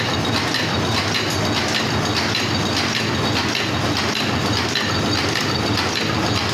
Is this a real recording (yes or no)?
yes